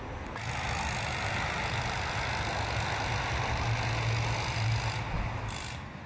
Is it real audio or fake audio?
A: real